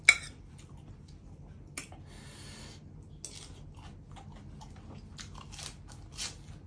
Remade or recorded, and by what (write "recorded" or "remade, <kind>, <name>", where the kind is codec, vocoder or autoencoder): recorded